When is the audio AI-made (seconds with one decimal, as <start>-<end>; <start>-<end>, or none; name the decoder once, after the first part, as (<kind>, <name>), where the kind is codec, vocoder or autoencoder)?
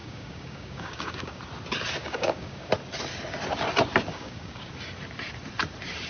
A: 0.0-1.4 (codec, DAC); 2.0-2.7; 4.1-4.7